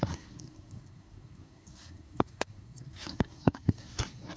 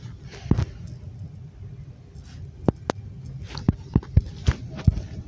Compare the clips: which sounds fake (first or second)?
first